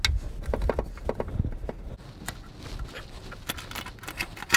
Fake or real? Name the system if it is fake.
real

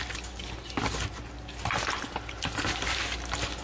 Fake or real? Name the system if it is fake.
real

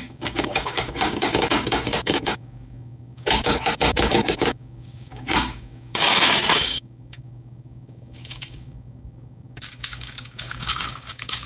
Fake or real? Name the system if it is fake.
fake, codec, DAC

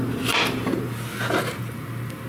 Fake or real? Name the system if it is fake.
real